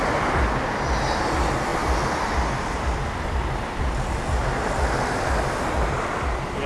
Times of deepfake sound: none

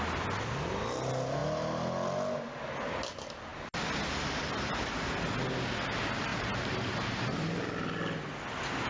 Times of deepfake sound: 6.3-6.9 (vocoder, BigVGAN v2)

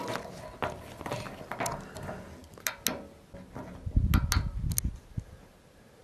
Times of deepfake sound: none

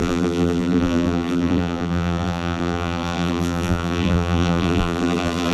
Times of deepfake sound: 0.0-5.5 (vocoder, BigVGAN v2)

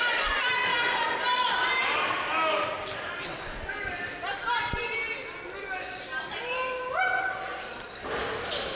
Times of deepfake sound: none

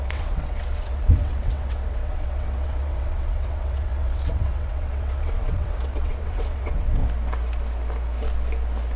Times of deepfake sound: 0.0-7.0 (vocoder, WaveNeXt)

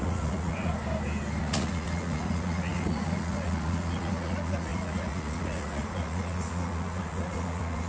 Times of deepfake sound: 0.0-0.7 (vocoder, Vocos); 1.4-7.9

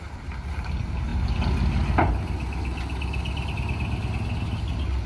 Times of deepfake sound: none